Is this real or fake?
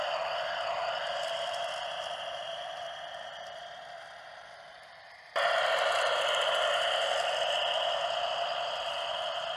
real